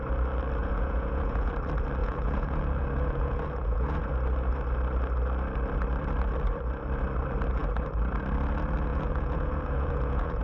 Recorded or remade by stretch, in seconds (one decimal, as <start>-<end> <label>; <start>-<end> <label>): 0.0-0.6 recorded; 0.6-1.5 remade; 1.5-2.0 recorded; 2.0-4.1 remade; 4.1-8.9 recorded; 8.9-10.4 remade